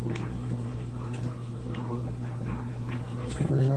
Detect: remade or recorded remade